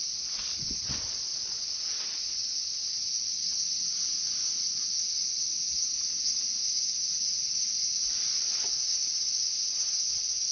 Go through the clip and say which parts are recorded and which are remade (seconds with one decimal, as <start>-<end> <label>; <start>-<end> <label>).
0.0-10.5 recorded